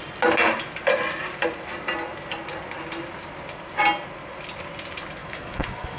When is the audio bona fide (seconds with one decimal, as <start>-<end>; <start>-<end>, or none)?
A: 0.0-5.2